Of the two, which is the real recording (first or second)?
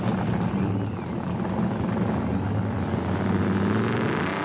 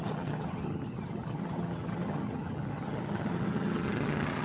first